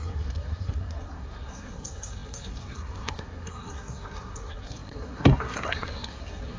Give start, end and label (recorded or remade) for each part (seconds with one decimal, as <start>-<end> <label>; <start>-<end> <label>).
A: 0.0-6.6 remade